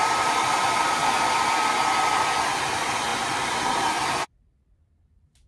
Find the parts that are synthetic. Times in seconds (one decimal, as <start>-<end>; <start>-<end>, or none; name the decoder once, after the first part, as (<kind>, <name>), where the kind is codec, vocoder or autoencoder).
0.0-1.0 (vocoder, BigVGAN v2); 2.7-5.5